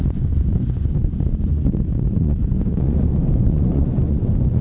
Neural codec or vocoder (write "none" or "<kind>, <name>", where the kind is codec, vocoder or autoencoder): vocoder, Vocos